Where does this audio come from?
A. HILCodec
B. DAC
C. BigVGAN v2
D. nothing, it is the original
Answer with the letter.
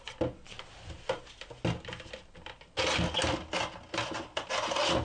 D